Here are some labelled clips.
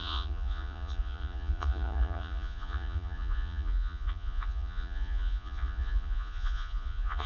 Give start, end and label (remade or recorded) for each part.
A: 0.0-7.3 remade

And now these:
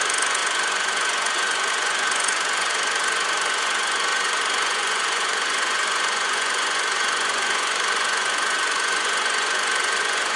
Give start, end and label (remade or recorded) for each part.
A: 0.0-10.4 remade

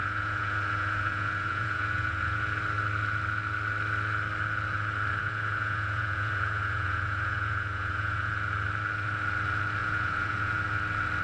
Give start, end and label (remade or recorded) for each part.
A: 0.0-2.4 remade; 2.4-5.2 recorded; 5.2-8.3 remade; 8.3-9.8 recorded; 9.8-10.6 remade; 10.6-11.2 recorded

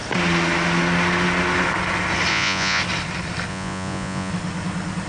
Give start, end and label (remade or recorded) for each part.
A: 0.0-2.3 recorded; 2.3-2.8 remade; 2.8-3.5 recorded; 3.5-4.3 remade; 4.3-5.1 recorded

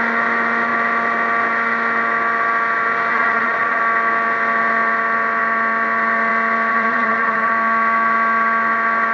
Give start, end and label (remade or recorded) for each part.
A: 0.0-3.1 recorded; 3.1-3.8 remade; 3.8-6.7 recorded; 6.7-7.5 remade; 7.5-9.1 recorded